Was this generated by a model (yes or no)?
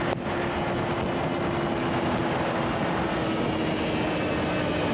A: no